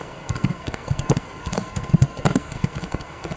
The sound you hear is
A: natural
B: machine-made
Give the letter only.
B